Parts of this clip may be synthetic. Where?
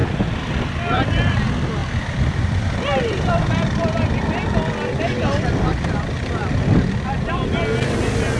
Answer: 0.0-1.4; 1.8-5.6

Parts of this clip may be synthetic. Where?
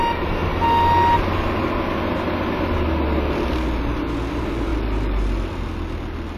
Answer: 0.0-0.5; 4.3-4.7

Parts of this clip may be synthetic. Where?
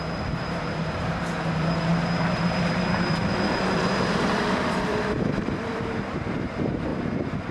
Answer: 0.0-6.9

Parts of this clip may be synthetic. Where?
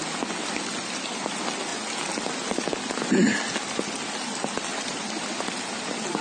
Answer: 4.7-5.5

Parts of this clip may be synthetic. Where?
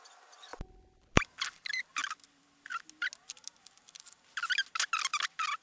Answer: 0.0-2.0; 5.0-5.6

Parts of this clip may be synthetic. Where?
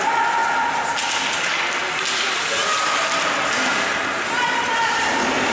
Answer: none